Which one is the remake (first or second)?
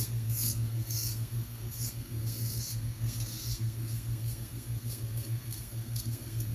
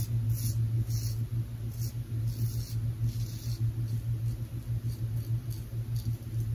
first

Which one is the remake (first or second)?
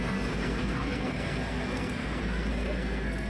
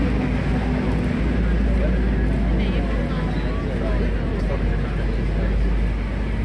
first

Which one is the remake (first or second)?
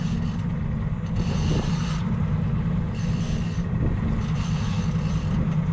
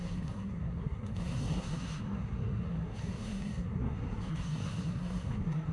second